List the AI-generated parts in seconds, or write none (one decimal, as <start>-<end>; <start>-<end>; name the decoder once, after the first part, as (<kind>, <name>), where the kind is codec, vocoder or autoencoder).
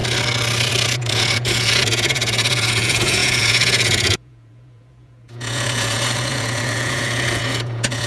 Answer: 0.7-8.1 (vocoder, Vocos)